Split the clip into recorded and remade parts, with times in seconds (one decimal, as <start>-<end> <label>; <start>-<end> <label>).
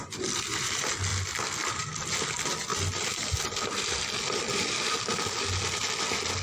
0.0-6.4 recorded